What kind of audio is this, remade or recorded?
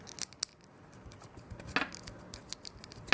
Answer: recorded